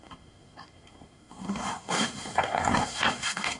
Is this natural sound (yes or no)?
no